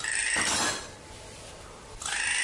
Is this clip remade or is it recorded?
recorded